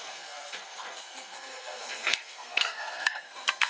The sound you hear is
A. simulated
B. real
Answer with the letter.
A